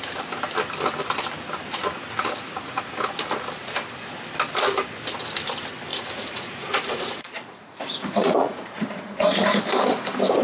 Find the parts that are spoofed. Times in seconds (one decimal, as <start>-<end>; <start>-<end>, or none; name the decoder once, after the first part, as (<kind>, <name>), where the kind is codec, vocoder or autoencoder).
5.9-9.6 (vocoder, Vocos)